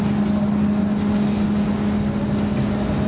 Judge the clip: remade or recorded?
recorded